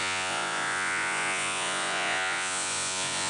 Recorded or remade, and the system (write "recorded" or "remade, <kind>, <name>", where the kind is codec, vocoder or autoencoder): remade, vocoder, Vocos